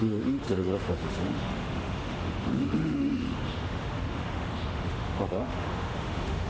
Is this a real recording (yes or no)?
no